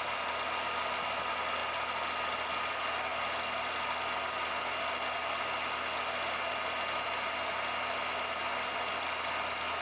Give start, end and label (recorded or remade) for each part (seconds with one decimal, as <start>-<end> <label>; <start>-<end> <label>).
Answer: 0.0-9.8 recorded